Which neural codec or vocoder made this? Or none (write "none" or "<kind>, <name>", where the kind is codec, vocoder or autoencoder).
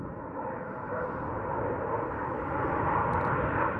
none